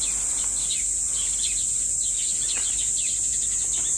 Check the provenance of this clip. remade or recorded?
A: recorded